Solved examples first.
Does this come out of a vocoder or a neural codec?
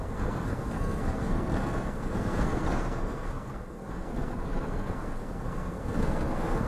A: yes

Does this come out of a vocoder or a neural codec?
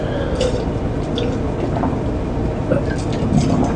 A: no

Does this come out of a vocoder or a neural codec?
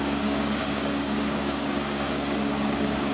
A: yes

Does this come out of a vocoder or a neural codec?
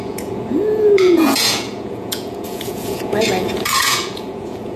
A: yes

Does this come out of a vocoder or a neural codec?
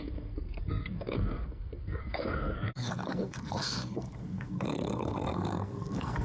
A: yes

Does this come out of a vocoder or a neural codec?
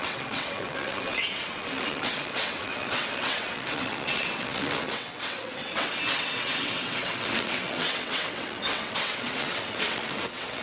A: yes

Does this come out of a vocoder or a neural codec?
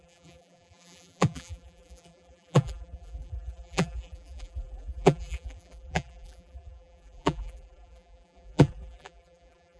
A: yes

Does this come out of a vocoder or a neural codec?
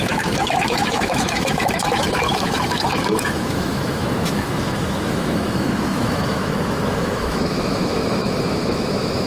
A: yes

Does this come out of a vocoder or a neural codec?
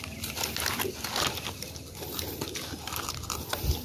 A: no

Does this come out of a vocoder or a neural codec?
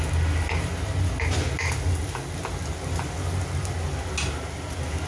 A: no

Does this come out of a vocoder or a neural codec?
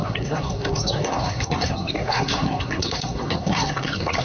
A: yes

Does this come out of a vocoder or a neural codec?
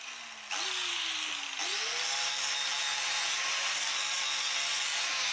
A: no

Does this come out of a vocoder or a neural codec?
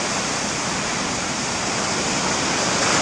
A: no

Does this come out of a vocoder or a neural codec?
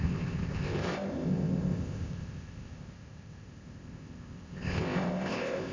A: yes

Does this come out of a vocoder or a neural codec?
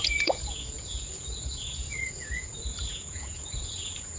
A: yes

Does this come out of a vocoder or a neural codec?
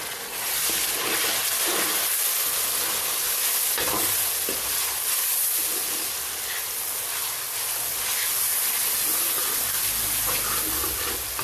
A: no